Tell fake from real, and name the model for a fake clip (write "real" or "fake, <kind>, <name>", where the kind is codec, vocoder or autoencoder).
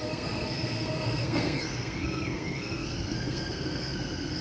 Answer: fake, codec, SNAC